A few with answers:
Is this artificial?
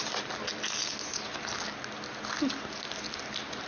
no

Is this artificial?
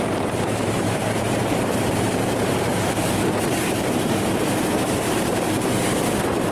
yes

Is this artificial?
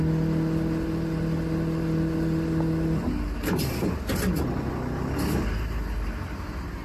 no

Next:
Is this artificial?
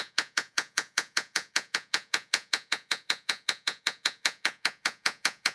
yes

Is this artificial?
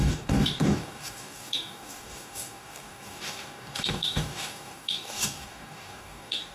yes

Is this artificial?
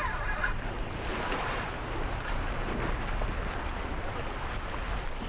no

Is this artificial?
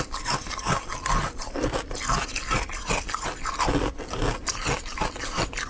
no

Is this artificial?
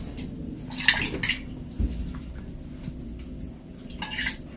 no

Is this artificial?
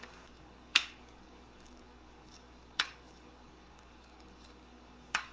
yes